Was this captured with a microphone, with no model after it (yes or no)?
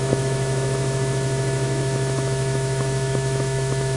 no